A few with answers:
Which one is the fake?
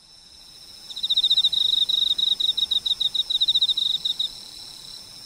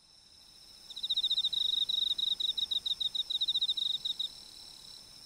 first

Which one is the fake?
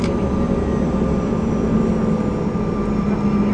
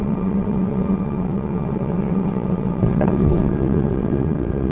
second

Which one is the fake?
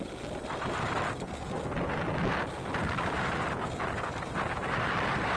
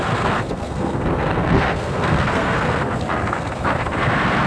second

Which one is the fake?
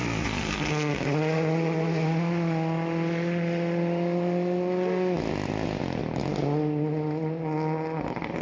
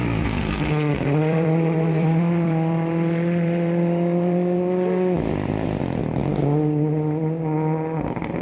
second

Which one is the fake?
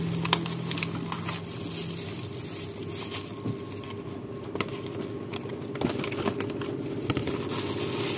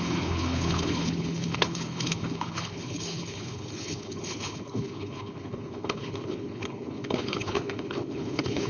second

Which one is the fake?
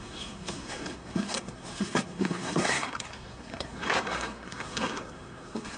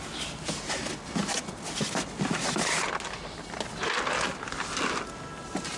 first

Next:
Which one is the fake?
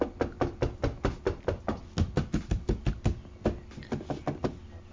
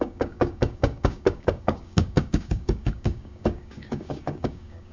second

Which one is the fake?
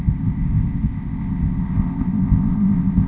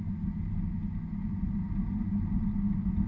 first